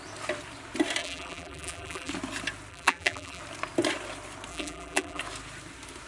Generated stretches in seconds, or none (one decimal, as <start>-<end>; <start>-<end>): 1.0-2.1; 2.7-3.4; 4.5-5.2